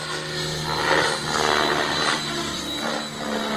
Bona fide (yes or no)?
yes